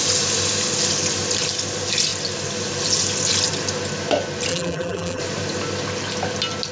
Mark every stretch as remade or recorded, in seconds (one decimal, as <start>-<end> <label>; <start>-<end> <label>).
0.0-4.5 recorded; 4.5-5.2 remade; 5.2-6.7 recorded